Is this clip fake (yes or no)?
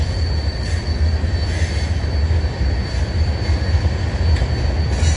no